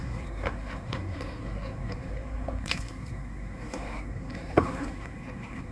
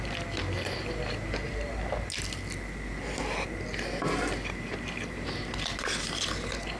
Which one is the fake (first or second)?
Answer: first